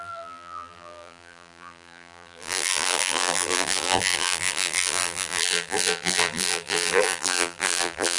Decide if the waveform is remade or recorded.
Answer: remade